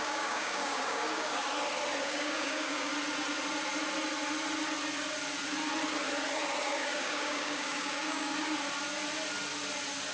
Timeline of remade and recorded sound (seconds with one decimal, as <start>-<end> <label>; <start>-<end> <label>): 0.0-1.4 remade; 1.4-2.0 recorded; 2.0-2.9 remade; 2.9-6.6 recorded; 6.6-8.3 remade; 8.3-10.1 recorded